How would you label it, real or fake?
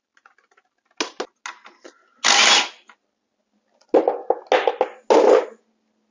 real